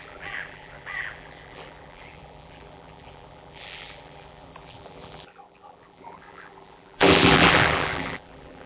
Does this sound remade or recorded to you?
remade